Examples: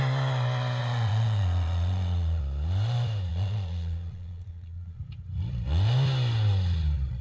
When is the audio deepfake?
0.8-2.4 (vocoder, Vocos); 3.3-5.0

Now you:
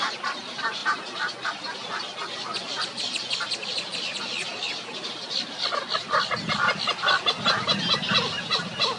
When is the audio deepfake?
none

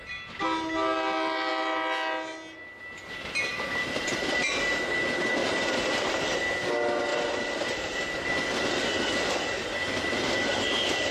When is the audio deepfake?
3.5-4.4 (vocoder, BigVGAN v2); 5.4-6.3; 7.1-8.7

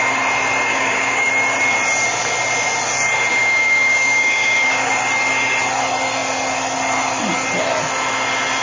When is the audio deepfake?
0.7-1.3 (codec, DAC); 3.3-4.9

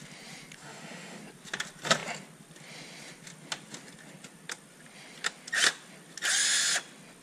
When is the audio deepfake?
0.6-1.2 (autoencoder, DAC-VAE)

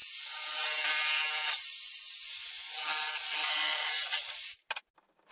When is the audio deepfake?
none

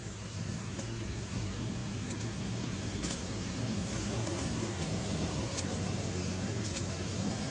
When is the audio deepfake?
0.0-7.5 (codec, SNAC)